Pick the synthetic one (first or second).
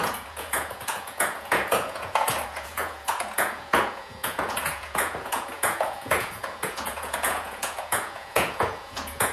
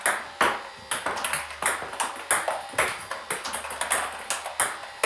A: first